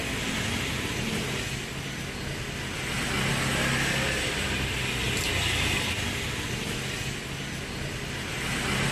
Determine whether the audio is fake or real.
real